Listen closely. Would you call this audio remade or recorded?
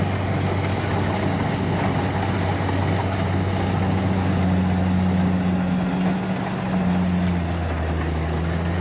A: recorded